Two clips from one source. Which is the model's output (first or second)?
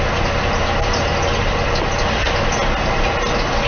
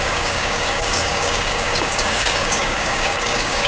second